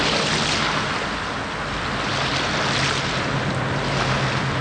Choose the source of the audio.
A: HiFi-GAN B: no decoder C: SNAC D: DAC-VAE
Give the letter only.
B